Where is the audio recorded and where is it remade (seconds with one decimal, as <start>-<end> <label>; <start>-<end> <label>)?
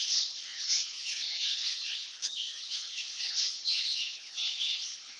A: 0.0-5.2 remade